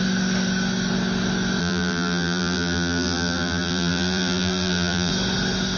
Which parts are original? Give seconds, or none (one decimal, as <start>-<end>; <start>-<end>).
0.0-1.6; 5.1-5.8